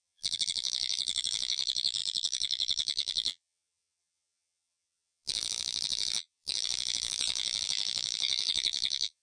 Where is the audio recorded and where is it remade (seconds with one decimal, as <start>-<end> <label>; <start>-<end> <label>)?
0.0-9.2 remade